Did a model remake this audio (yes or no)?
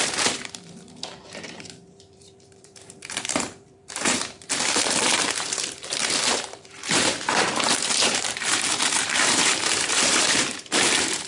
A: yes